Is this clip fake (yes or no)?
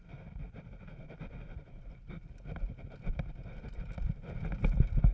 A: no